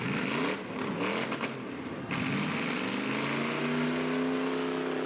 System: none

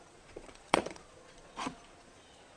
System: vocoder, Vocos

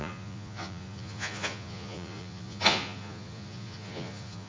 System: vocoder, Vocos